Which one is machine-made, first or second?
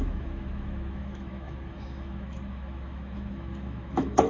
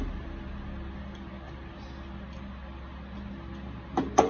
first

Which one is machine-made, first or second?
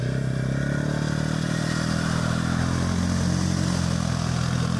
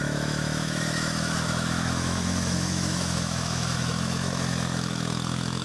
second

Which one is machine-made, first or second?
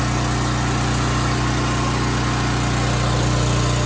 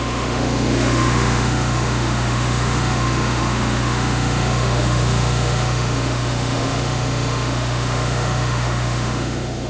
second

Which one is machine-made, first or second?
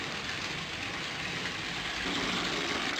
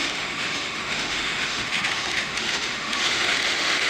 second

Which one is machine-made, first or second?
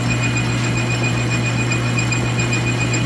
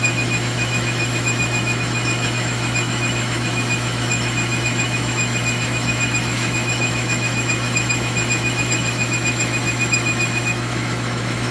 second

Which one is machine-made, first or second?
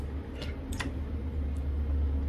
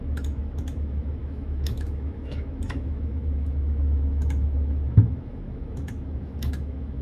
second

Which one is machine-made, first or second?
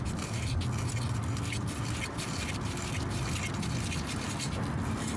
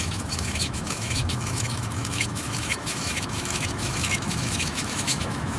second